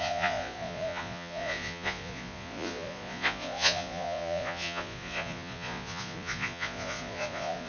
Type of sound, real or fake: fake